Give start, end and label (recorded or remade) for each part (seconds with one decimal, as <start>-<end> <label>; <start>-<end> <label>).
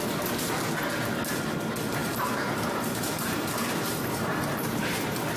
0.0-2.0 recorded; 2.0-5.4 remade